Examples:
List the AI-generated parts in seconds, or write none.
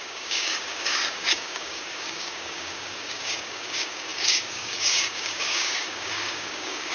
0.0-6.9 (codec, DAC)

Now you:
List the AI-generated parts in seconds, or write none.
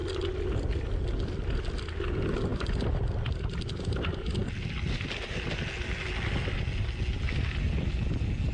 none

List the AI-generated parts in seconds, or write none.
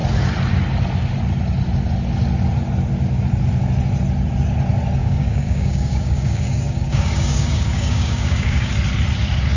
5.0-8.7 (codec, DAC)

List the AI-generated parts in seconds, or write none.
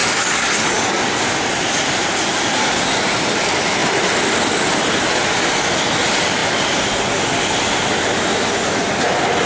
0.0-1.0 (codec, DAC)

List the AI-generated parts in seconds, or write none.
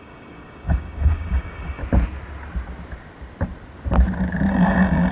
0.0-1.8 (codec, DAC); 4.5-5.1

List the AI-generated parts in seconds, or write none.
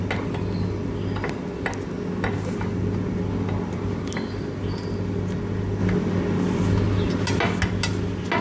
none